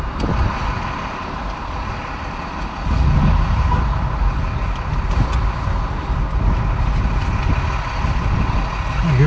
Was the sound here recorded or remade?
recorded